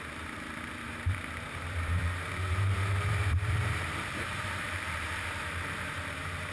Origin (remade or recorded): remade